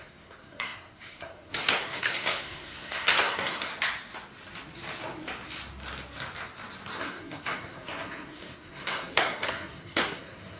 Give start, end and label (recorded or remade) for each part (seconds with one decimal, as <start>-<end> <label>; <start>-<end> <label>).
0.0-3.7 remade; 3.7-7.0 recorded; 7.0-10.6 remade